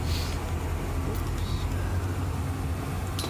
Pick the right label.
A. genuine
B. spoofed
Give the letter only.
A